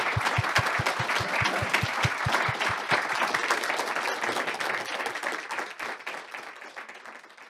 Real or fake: real